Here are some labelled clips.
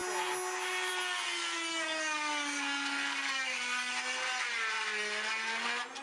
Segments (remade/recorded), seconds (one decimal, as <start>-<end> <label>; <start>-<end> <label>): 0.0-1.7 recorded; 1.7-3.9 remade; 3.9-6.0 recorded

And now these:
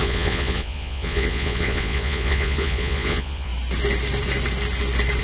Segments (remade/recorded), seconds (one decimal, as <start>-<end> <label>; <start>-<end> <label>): 0.0-3.5 remade; 3.5-5.2 recorded

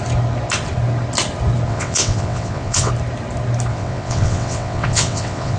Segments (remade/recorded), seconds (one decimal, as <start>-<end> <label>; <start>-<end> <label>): 0.0-1.7 recorded; 1.7-2.9 remade; 2.9-3.7 recorded; 3.7-5.6 remade

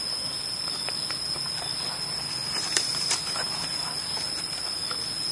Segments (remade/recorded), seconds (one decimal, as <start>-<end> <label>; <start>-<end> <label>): 0.0-2.4 recorded; 2.4-3.5 remade; 3.5-5.3 recorded

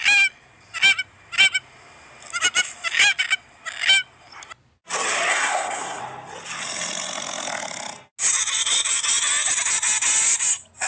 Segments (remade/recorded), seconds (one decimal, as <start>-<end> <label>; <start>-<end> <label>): 0.0-5.3 recorded; 5.3-6.0 remade; 6.0-10.9 recorded

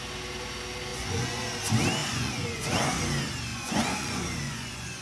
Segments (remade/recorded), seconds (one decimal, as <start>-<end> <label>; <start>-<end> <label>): 0.0-0.9 recorded; 0.9-1.4 remade; 1.4-2.0 recorded; 2.0-3.0 remade; 3.0-3.5 recorded; 3.5-5.0 remade